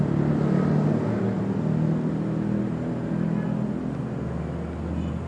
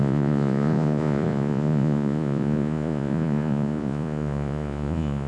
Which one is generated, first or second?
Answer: second